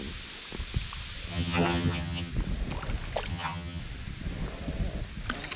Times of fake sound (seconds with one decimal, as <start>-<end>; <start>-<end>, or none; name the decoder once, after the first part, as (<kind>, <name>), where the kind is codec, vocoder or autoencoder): 1.3-2.3 (vocoder, HiFi-GAN); 3.3-3.8